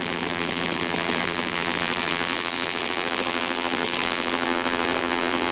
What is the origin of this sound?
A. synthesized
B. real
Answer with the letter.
A